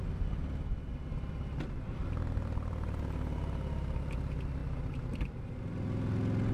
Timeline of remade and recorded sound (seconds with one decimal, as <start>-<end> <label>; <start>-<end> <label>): 0.0-4.6 recorded; 4.6-5.6 remade; 5.6-6.5 recorded